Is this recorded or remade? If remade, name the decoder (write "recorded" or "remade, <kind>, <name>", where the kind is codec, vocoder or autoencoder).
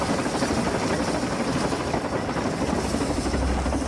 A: recorded